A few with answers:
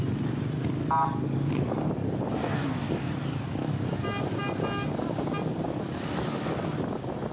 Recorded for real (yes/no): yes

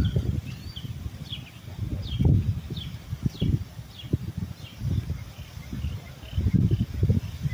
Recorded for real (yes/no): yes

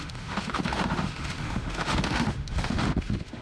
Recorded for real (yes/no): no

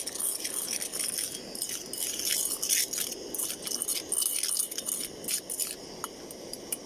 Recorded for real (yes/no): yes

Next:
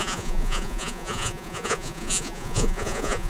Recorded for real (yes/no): no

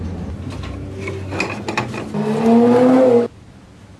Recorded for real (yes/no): yes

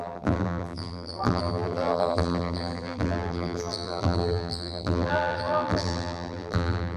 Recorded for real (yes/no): no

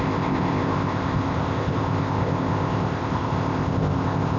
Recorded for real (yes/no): no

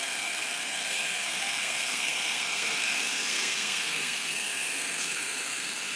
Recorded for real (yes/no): no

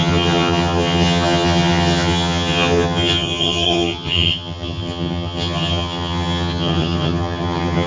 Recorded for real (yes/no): no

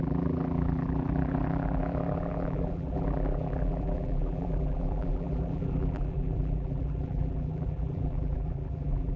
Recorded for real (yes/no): no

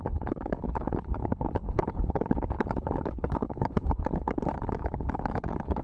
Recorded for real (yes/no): no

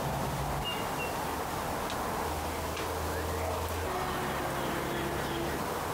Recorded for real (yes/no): yes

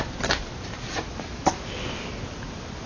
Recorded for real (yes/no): yes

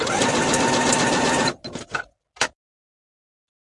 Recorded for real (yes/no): yes